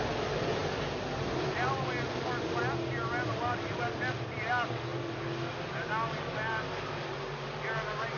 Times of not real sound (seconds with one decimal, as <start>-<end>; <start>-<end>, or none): none